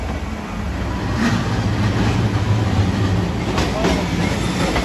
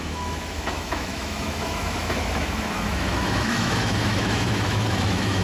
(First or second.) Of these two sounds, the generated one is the second